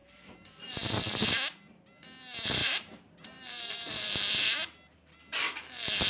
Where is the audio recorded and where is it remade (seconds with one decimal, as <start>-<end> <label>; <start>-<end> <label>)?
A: 0.0-1.0 remade; 1.0-2.6 recorded; 2.6-4.1 remade; 4.1-6.1 recorded